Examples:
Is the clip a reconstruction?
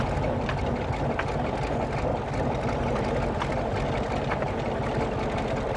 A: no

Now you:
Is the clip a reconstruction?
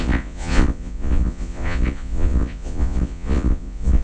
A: yes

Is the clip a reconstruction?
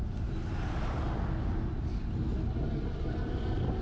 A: no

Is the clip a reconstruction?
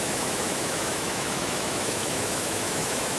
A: yes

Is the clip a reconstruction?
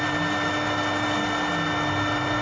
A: no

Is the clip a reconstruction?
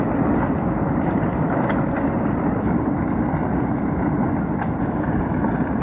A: no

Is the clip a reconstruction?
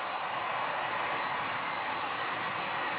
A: no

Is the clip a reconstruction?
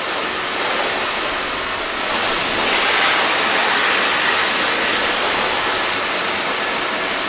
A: no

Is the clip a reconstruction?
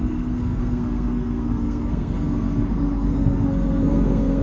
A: yes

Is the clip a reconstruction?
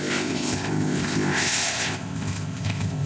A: yes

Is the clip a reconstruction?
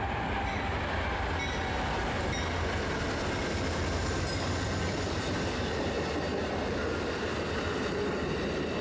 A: no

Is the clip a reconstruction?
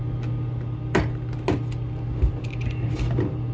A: no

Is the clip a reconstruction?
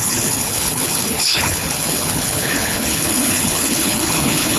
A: yes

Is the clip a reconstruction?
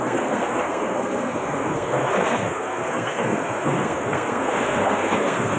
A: yes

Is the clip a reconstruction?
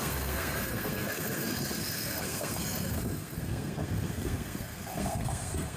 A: yes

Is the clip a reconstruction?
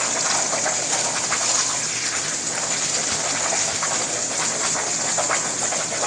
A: no